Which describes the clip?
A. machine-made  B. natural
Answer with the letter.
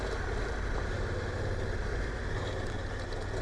B